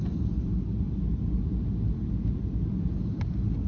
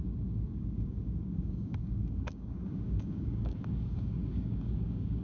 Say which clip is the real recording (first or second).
first